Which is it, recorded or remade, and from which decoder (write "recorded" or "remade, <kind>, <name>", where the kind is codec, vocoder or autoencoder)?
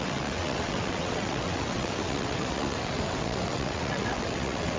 remade, vocoder, WaveNeXt